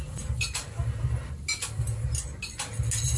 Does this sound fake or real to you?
real